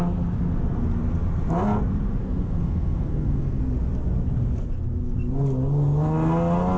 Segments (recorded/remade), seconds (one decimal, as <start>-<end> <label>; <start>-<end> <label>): 0.0-2.2 recorded; 2.2-3.6 remade; 3.6-6.8 recorded